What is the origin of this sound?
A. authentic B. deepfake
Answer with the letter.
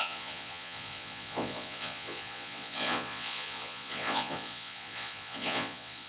B